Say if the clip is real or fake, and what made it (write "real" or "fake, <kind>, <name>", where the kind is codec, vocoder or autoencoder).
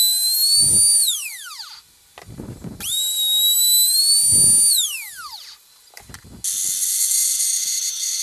real